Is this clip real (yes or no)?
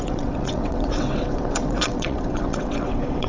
no